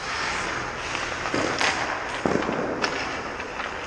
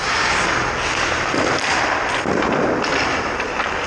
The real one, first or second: first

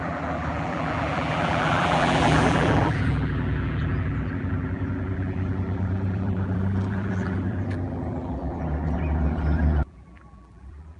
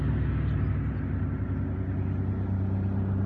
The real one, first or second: second